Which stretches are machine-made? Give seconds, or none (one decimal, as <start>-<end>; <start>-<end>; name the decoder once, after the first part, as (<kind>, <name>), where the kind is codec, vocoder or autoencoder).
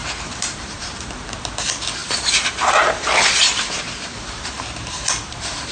0.0-1.4 (vocoder, BigVGAN v2); 2.0-5.7